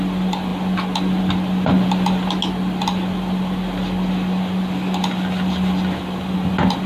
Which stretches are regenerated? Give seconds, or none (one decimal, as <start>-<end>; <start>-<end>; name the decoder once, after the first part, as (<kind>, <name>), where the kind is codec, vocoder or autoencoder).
none

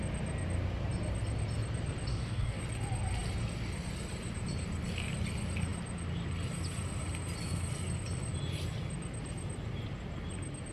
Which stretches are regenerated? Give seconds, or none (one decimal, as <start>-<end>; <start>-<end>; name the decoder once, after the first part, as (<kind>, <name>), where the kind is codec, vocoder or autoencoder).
2.1-2.6 (codec, DAC)

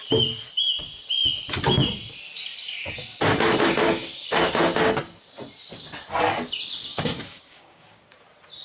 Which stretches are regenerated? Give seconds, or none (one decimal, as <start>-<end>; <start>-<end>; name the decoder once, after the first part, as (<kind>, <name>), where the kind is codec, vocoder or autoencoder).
6.9-8.0 (codec, DAC)

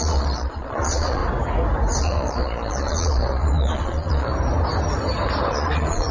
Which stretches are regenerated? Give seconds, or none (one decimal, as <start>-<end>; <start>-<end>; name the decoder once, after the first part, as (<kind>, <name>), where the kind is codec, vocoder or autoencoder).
0.0-1.2 (vocoder, Vocos); 2.0-4.3; 5.5-6.1